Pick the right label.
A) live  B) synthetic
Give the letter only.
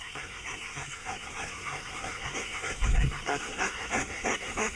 B